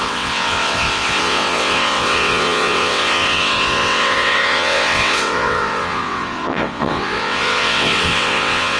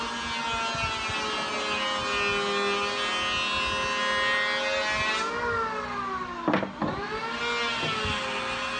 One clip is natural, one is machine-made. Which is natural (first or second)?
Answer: second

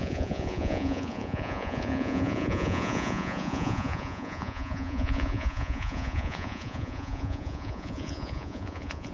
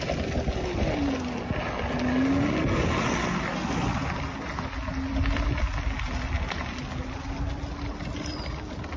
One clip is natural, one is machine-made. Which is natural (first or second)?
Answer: second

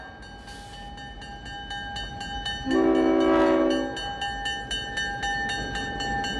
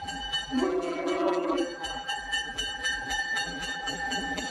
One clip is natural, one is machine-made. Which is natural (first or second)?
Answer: first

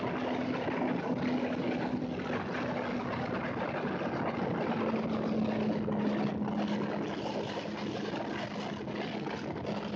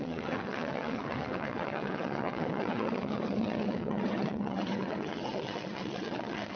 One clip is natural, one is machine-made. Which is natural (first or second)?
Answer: first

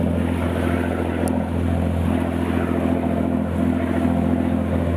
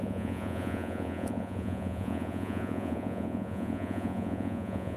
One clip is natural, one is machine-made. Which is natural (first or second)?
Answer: first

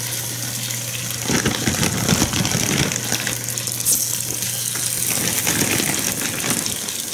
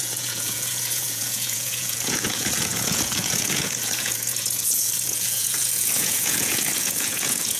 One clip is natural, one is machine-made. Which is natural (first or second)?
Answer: first